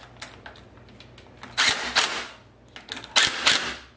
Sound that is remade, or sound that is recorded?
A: recorded